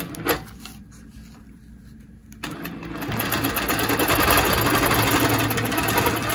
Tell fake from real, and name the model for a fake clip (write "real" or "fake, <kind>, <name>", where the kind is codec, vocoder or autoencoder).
real